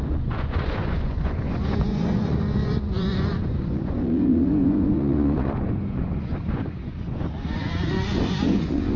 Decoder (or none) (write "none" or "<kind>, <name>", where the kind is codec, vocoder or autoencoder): vocoder, Vocos